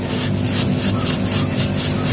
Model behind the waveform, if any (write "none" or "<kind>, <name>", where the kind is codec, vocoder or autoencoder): none